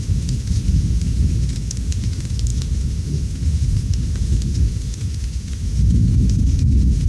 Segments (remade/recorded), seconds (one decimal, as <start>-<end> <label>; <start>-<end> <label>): 0.0-7.1 remade